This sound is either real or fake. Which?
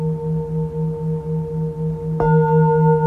real